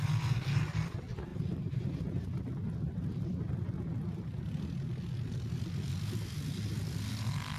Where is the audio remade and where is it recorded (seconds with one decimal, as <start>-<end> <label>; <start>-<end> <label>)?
0.0-7.6 recorded

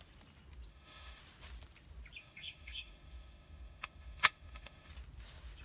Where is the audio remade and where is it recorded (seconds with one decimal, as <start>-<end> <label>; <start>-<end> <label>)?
0.0-0.7 recorded; 0.7-1.2 remade; 1.2-2.2 recorded; 2.2-4.9 remade; 4.9-5.6 recorded